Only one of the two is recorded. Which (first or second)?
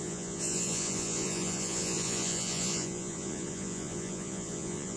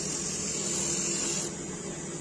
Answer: second